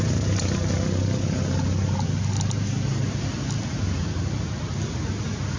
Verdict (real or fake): real